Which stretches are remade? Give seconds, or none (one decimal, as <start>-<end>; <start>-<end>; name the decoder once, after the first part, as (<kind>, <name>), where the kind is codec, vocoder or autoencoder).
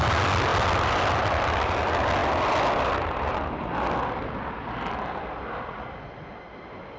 none